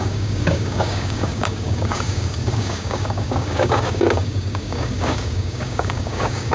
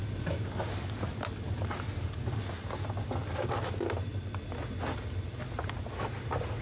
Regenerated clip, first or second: first